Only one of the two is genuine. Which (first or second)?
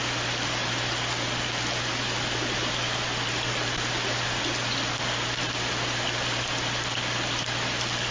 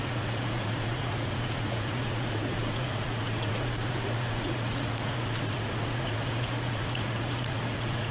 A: first